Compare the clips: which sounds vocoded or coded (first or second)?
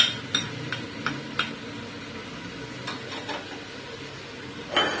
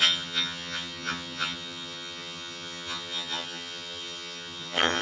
second